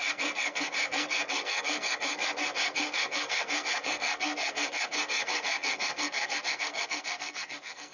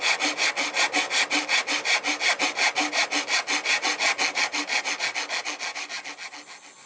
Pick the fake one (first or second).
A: first